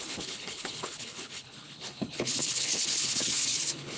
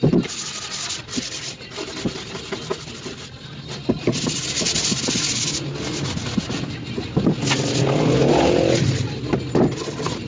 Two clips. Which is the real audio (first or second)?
second